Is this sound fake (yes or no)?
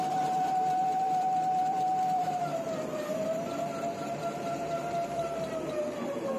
yes